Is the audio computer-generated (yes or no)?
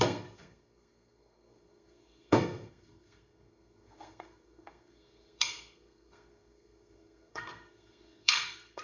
yes